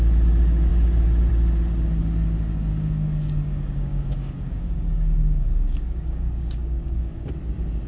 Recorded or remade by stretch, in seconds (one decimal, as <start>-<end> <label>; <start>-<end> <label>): 0.0-2.7 recorded; 2.7-7.3 remade; 7.3-7.9 recorded